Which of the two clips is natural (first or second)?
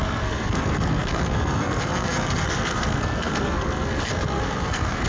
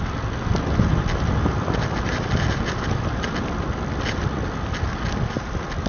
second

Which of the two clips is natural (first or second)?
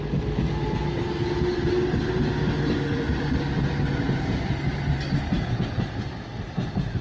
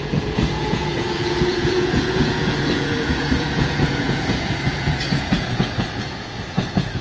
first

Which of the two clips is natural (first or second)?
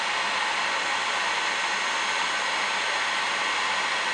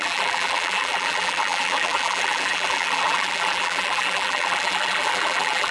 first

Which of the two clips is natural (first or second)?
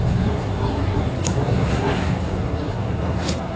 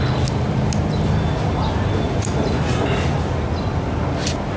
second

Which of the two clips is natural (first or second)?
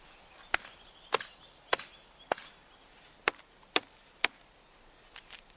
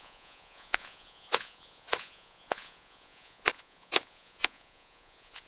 first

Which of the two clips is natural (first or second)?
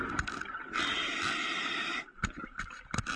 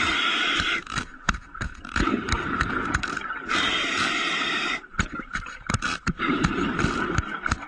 first